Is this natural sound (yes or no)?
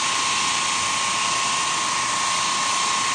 yes